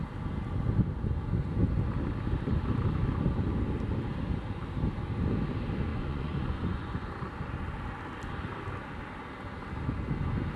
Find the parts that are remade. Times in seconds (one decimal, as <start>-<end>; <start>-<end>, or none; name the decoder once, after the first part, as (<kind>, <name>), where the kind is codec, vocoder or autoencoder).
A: 5.9-7.1 (vocoder, Vocos)